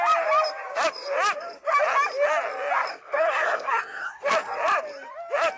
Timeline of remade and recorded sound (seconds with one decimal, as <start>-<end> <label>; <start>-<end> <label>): 0.0-2.9 recorded; 2.9-4.3 remade; 4.3-5.6 recorded